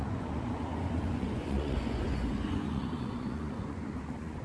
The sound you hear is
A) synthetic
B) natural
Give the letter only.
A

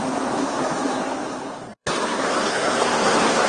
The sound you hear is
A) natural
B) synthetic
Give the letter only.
B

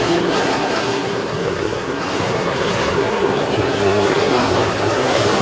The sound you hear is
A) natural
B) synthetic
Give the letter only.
B